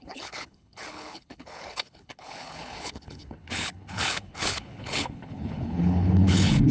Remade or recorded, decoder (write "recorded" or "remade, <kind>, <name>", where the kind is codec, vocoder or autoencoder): remade, codec, HILCodec